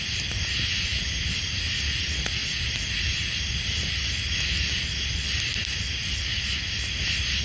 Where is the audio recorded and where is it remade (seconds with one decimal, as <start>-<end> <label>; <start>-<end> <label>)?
0.0-7.4 recorded

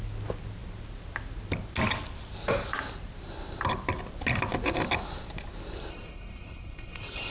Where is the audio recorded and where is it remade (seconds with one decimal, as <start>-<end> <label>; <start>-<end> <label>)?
0.0-5.9 recorded; 5.9-7.3 remade